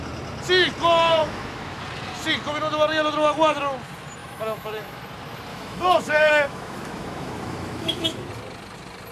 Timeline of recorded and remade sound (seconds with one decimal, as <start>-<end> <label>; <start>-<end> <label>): 0.0-1.2 recorded; 1.2-1.8 remade; 1.8-4.2 recorded; 4.2-5.0 remade; 5.0-5.5 recorded; 5.5-8.3 remade; 8.3-9.1 recorded